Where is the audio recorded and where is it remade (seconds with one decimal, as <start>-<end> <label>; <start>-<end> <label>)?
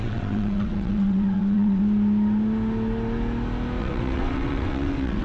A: 0.0-1.8 remade; 1.8-3.8 recorded; 3.8-5.2 remade